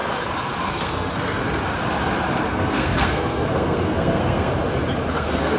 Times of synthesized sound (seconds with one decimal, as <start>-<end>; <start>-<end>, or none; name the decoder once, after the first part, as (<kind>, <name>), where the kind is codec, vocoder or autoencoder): 0.6-1.4 (codec, SNAC); 2.5-4.5; 5.1-5.6